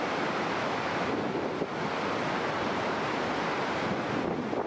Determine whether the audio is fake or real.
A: real